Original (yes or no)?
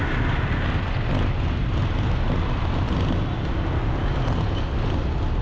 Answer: yes